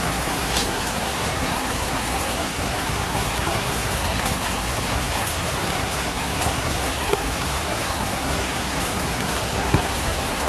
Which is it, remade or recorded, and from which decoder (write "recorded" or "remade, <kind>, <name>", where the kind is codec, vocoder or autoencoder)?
remade, codec, SNAC